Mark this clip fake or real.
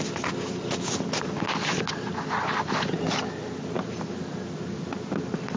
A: real